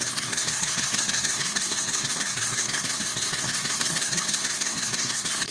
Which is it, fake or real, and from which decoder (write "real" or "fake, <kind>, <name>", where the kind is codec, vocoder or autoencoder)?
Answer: fake, codec, SNAC